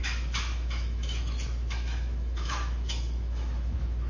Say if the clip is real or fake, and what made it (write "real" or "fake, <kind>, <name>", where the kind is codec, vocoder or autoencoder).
fake, autoencoder, DAC-VAE